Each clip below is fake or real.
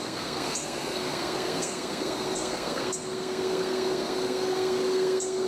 fake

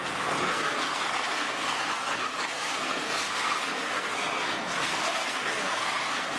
fake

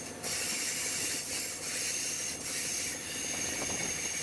real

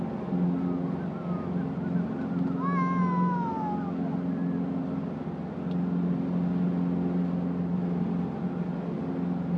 real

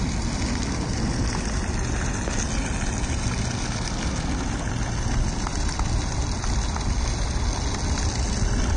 real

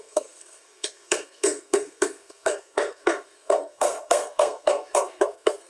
fake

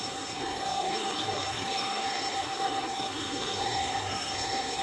fake